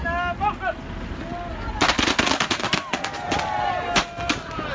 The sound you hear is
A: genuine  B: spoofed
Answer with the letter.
A